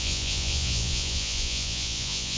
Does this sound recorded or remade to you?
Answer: remade